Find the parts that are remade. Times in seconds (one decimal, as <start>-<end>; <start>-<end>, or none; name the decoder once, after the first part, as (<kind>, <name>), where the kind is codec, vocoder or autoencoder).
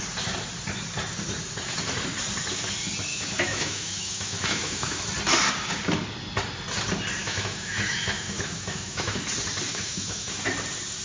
3.1-5.0 (autoencoder, DAC-VAE); 7.2-9.2; 9.7-10.4